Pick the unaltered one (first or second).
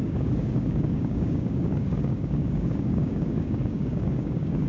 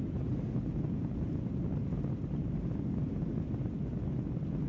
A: second